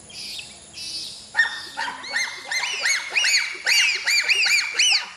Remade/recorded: recorded